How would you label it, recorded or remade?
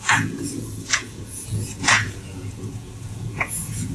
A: remade